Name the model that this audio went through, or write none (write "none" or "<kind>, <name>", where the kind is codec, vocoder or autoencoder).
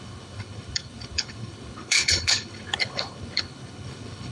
codec, HILCodec